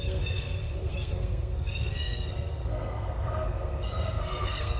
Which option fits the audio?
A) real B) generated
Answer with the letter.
B